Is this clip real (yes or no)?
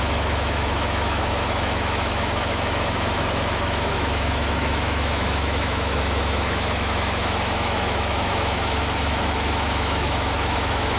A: no